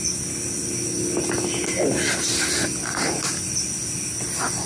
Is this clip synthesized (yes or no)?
no